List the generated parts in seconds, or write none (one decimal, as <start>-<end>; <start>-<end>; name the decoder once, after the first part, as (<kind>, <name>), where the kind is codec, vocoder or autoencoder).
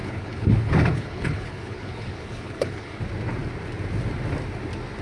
0.0-3.0 (codec, HILCodec)